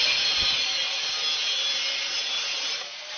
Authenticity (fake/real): real